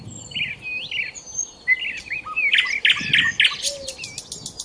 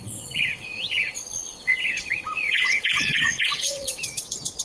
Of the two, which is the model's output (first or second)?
second